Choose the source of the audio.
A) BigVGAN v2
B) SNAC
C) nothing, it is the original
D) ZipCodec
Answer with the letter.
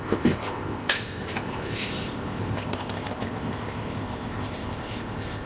D